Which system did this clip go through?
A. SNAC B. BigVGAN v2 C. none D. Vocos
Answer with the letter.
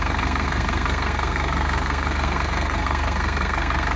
A